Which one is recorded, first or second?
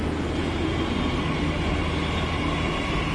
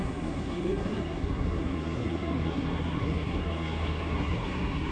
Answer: first